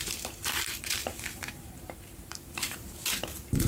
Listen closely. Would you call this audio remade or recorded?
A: remade